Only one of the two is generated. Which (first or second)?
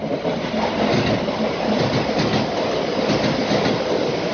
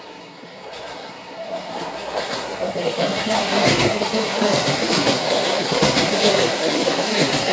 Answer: second